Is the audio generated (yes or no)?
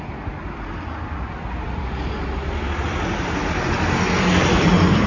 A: no